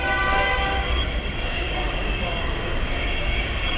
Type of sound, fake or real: fake